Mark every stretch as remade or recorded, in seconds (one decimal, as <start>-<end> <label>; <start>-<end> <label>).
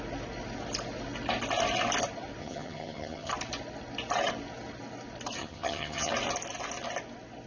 0.0-2.4 recorded; 2.4-3.3 remade; 3.3-5.4 recorded; 5.4-6.1 remade; 6.1-7.5 recorded